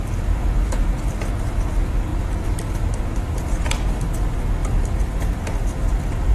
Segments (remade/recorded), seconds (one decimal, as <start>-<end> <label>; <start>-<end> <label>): 0.0-6.3 recorded